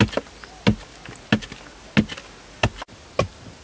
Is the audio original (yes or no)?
yes